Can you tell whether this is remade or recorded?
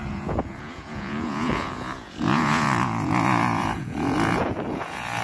remade